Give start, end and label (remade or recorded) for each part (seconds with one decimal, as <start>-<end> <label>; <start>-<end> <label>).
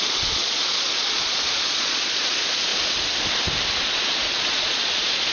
0.0-2.7 remade; 2.7-3.8 recorded; 3.8-5.3 remade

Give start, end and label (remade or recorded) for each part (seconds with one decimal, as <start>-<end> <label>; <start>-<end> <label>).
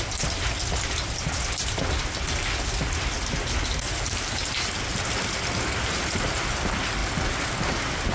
0.0-8.1 recorded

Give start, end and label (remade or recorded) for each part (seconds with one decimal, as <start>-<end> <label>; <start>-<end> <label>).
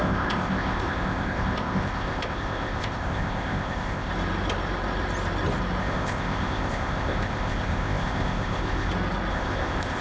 0.0-4.1 remade; 4.1-5.8 recorded; 5.8-8.9 remade; 8.9-9.3 recorded; 9.3-10.0 remade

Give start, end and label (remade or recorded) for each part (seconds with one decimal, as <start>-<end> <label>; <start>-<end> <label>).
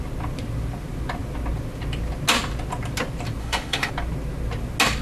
0.0-3.4 recorded; 3.4-3.9 remade; 3.9-5.0 recorded